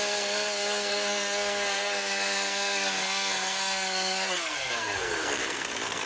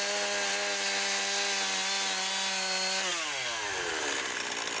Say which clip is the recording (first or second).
second